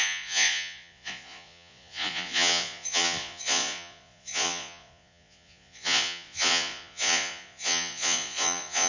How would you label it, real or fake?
fake